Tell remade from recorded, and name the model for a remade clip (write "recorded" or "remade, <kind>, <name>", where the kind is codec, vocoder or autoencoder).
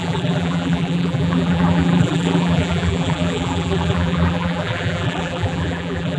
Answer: remade, vocoder, BigVGAN v2